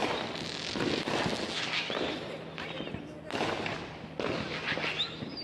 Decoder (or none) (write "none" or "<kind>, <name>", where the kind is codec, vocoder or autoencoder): none